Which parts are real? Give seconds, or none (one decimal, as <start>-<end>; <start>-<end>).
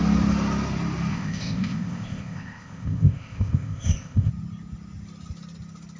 0.0-1.1; 4.3-6.0